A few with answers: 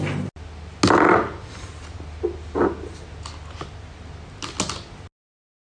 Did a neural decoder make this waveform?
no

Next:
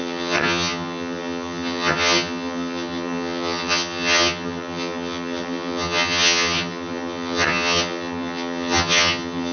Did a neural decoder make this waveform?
yes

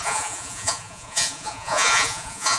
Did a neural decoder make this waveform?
yes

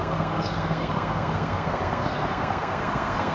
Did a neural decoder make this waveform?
yes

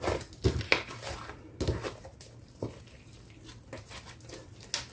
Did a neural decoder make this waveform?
no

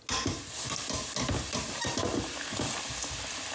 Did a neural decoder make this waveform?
no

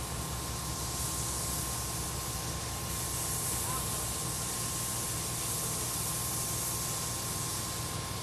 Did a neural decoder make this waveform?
no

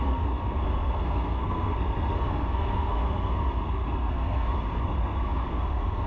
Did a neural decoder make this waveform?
yes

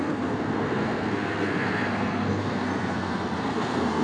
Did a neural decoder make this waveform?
yes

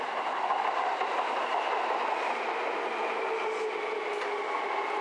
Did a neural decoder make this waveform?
no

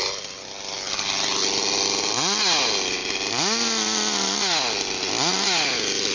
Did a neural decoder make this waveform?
no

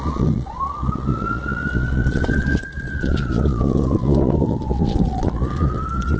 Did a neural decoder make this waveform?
yes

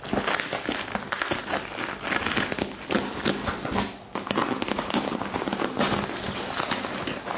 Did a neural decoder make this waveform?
no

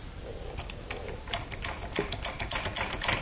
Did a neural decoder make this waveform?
no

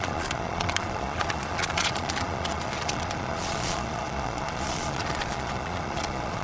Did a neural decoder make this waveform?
yes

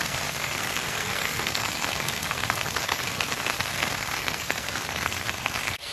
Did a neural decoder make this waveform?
yes